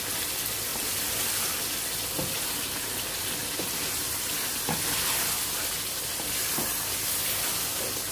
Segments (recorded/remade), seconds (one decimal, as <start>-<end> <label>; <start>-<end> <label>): 0.0-0.7 recorded; 0.7-1.6 remade; 1.6-8.1 recorded